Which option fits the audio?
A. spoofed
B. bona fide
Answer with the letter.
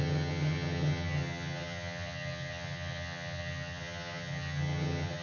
A